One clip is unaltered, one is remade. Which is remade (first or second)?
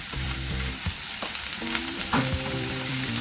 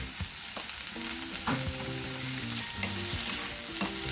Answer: first